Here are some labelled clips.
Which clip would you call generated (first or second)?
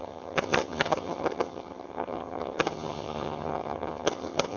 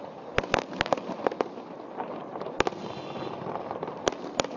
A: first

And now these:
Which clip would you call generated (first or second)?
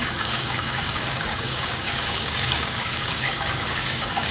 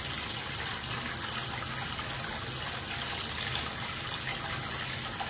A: first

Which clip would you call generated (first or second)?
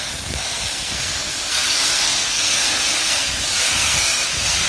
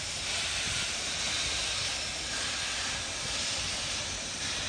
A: first